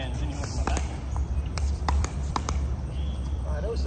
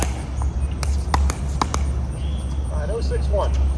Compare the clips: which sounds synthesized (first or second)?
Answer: first